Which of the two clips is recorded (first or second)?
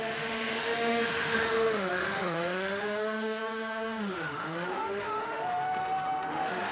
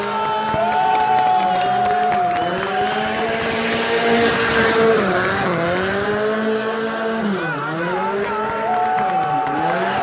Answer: second